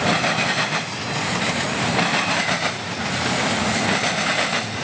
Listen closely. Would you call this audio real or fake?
fake